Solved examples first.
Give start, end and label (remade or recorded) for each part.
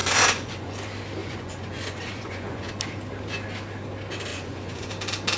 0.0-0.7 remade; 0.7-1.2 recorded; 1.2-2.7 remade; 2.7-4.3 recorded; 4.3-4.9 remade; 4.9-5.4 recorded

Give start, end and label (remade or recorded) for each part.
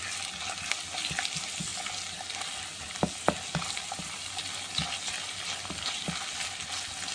0.0-7.1 recorded